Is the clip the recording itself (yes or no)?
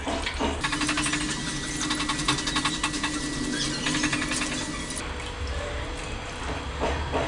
yes